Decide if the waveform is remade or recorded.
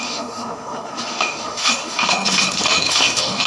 remade